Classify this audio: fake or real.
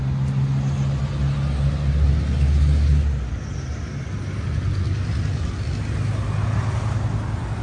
real